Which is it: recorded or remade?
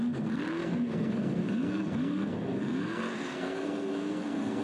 remade